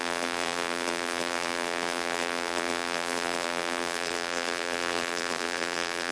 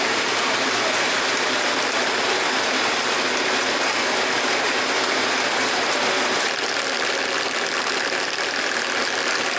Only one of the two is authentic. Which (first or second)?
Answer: second